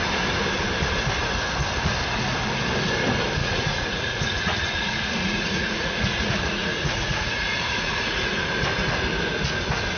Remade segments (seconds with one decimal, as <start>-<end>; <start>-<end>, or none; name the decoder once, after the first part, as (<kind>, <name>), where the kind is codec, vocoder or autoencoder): 3.4-8.3 (vocoder, Vocos)